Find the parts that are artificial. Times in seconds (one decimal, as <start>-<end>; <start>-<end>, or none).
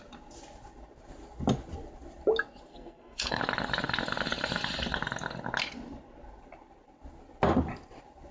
2.7-3.4